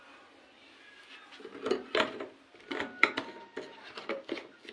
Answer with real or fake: real